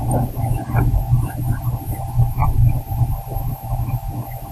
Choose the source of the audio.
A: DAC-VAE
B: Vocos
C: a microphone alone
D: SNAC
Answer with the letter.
C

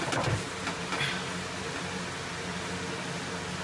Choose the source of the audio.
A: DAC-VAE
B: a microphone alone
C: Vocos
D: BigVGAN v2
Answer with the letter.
B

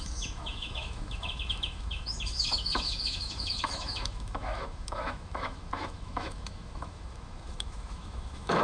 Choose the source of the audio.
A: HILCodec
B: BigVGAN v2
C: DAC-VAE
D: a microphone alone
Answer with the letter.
C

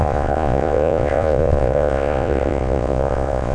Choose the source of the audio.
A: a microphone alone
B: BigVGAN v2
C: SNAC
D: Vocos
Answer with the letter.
D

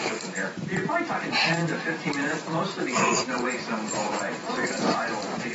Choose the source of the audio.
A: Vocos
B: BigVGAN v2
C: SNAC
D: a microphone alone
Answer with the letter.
B